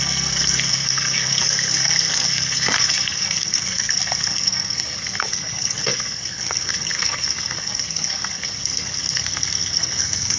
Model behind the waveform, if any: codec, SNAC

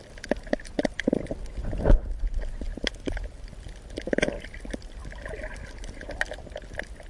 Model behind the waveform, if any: none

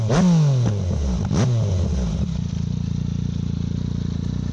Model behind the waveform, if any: none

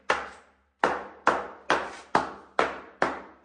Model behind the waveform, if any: none